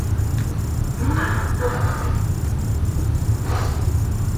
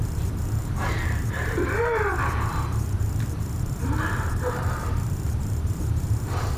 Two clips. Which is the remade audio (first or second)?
second